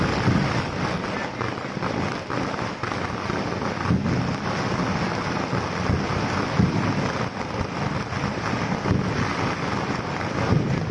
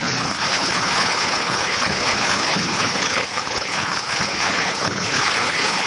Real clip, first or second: first